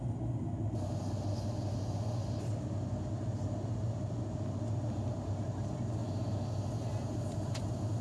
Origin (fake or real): real